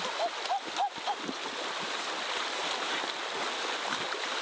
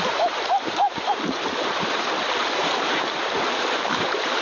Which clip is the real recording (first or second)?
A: first